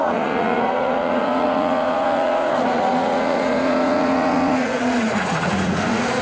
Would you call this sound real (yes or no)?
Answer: no